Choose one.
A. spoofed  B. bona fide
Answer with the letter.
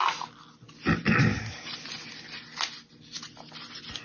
B